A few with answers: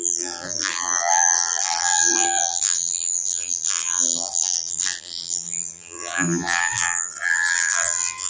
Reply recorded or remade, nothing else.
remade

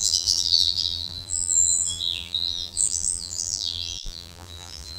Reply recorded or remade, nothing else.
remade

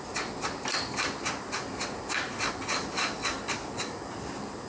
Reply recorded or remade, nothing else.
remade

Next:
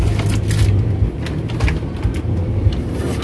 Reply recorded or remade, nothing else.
recorded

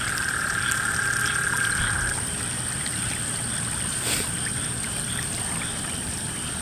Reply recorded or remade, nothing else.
remade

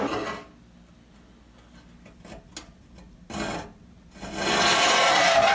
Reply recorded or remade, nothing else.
recorded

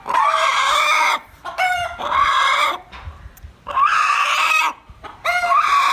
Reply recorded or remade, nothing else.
remade